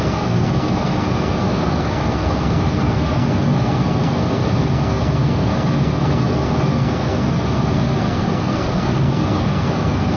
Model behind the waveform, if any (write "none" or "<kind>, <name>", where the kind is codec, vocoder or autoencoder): codec, SNAC